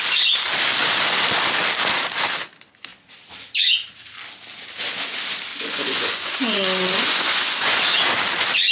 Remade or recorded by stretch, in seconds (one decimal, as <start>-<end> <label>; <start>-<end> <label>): 0.0-5.5 recorded; 5.5-7.8 remade; 7.8-8.7 recorded